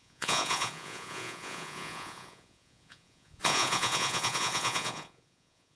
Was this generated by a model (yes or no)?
yes